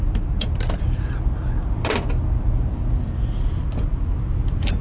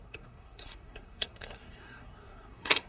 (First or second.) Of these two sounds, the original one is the first